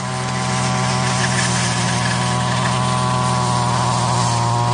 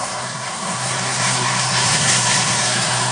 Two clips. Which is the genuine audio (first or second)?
first